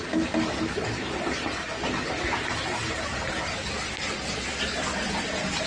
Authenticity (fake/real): real